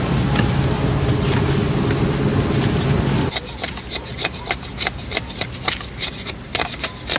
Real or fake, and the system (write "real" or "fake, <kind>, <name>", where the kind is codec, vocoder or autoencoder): real